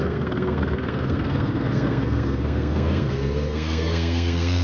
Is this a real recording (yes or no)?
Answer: no